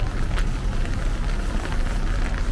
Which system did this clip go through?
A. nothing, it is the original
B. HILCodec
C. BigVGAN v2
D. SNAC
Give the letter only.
A